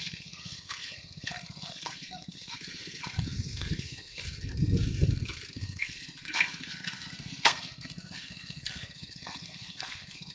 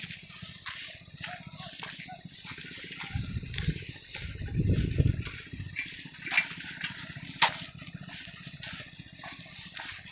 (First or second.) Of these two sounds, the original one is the second